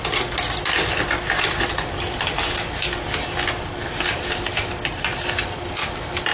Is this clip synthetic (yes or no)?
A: no